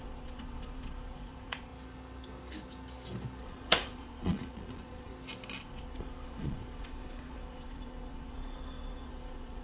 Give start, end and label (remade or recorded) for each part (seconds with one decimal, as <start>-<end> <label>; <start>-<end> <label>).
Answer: 0.0-1.7 remade; 1.7-3.4 recorded; 3.4-5.1 remade; 5.1-5.6 recorded; 5.6-9.6 remade